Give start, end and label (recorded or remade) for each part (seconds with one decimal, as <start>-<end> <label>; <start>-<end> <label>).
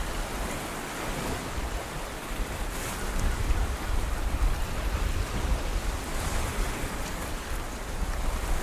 0.0-2.2 recorded; 2.2-6.0 remade; 6.0-8.6 recorded